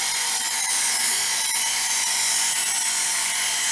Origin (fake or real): fake